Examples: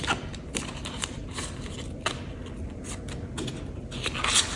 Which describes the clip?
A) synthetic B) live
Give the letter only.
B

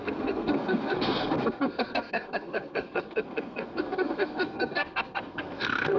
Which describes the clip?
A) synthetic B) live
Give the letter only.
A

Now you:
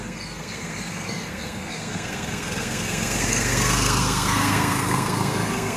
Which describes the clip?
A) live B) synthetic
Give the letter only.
B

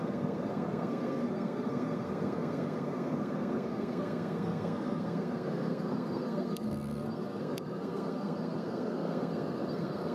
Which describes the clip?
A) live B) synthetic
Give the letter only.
B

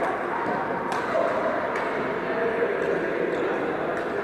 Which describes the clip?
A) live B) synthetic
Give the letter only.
A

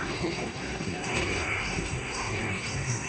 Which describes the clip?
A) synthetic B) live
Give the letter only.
A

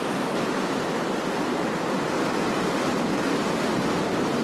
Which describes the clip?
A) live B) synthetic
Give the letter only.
A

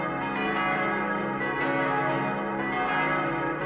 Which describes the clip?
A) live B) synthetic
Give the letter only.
A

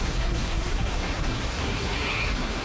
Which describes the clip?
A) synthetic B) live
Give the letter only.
A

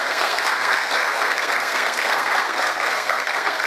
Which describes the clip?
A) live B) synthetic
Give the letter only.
B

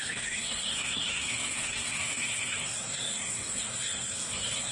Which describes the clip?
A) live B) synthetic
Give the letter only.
B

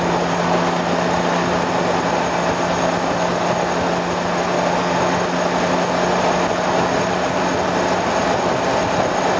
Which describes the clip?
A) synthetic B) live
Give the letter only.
B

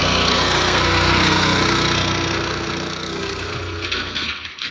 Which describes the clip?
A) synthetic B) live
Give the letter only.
A